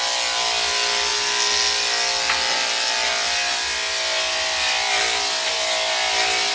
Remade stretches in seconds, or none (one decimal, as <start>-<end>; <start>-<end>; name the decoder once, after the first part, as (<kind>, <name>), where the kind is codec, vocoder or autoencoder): none